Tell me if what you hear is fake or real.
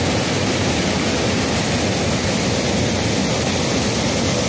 real